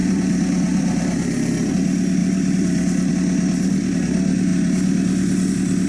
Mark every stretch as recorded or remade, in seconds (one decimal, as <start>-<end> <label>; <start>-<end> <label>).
0.0-1.7 remade; 1.7-2.2 recorded; 2.2-3.1 remade; 3.1-5.9 recorded